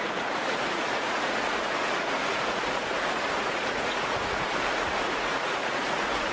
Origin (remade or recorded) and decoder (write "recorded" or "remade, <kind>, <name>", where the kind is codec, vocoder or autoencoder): remade, vocoder, Vocos